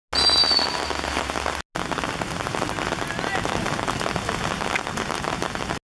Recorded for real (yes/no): yes